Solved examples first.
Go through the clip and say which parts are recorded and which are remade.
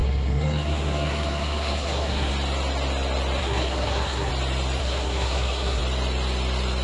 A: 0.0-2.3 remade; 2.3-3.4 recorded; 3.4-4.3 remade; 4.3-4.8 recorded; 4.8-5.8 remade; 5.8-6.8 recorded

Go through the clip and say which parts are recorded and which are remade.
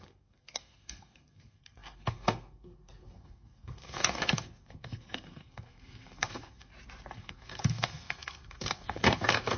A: 0.0-6.7 remade; 6.7-7.2 recorded; 7.2-9.6 remade